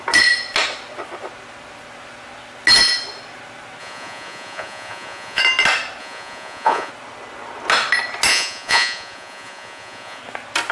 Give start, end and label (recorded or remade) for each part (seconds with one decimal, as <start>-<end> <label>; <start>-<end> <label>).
0.0-3.8 recorded; 3.8-5.4 remade; 5.4-6.0 recorded; 6.0-6.9 remade; 6.9-8.3 recorded; 8.3-10.2 remade; 10.2-10.7 recorded